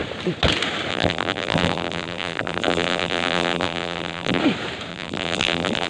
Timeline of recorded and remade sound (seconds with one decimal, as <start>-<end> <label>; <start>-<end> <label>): 0.0-0.9 recorded; 0.9-4.4 remade; 4.4-4.9 recorded; 4.9-5.9 remade